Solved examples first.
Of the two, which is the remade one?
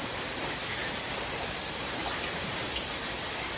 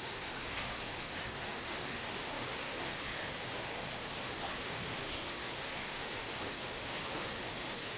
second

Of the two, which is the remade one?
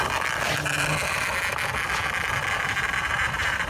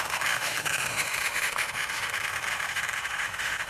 second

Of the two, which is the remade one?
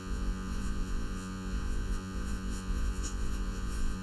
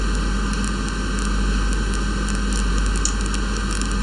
first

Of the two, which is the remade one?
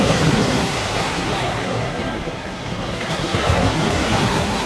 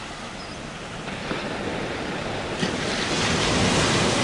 first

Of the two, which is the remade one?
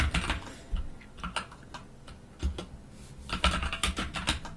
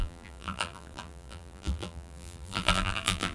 second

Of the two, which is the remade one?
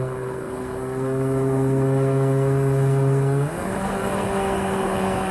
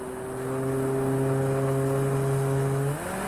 first